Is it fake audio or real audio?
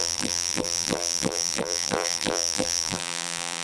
fake